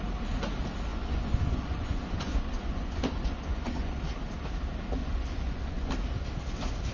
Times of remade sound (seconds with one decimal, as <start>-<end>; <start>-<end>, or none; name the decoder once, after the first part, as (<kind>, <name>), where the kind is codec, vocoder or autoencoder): 0.9-4.0 (vocoder, Vocos); 5.0-5.9